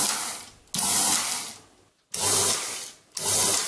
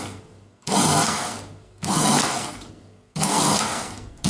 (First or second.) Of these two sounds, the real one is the first